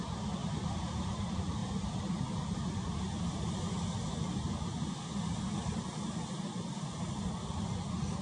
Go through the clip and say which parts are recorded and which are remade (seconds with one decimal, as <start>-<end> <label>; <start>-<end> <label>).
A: 0.0-8.2 recorded